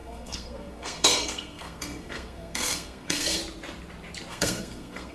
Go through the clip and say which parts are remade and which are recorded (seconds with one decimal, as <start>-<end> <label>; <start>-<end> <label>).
0.0-3.4 remade; 3.4-4.3 recorded; 4.3-5.1 remade